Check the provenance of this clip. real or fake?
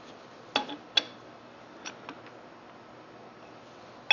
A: real